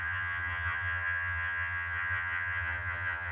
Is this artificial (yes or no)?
yes